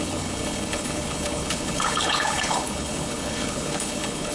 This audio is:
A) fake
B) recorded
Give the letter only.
A